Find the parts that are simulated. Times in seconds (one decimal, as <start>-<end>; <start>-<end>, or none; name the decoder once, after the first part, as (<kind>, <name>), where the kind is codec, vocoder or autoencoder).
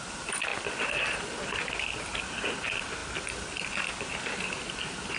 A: none